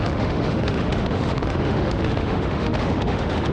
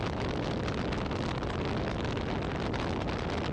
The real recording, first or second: second